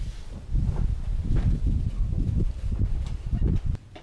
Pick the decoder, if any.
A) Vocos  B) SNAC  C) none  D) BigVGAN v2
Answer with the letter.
C